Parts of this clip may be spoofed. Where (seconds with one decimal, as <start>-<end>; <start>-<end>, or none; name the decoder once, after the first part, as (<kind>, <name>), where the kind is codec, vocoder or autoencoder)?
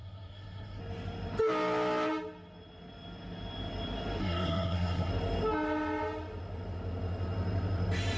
0.0-0.8 (codec, SNAC); 4.2-5.1